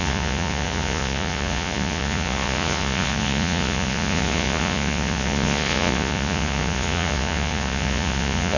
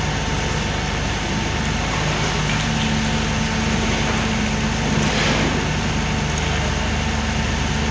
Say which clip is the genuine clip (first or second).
second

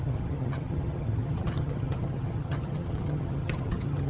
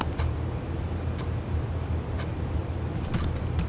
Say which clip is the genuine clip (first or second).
second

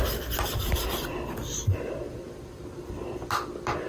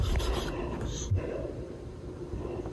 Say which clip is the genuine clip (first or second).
first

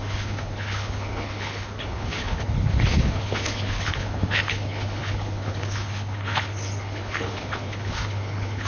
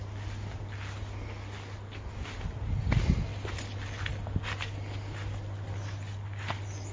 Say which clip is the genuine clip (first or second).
second